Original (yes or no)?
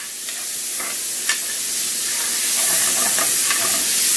yes